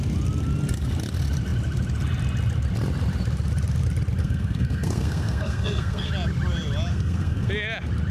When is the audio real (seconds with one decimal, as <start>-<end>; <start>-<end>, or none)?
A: 0.0-4.2; 6.1-6.9; 7.5-8.1